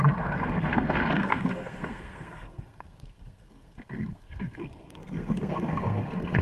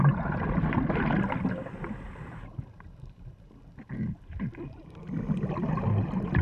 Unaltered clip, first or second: second